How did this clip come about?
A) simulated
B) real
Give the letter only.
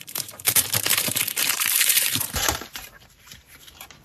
A